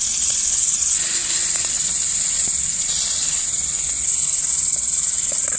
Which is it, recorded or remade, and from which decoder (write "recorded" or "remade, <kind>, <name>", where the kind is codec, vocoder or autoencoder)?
remade, vocoder, Vocos